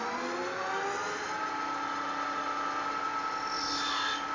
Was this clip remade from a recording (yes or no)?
no